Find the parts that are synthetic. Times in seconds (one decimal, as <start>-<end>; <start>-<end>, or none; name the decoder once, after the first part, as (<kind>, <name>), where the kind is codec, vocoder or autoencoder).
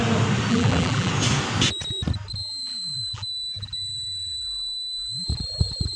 0.5-1.1 (vocoder, BigVGAN v2); 2.4-6.0